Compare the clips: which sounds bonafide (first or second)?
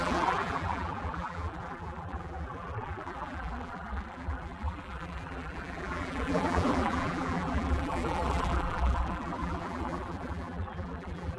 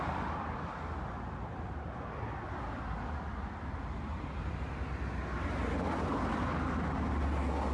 second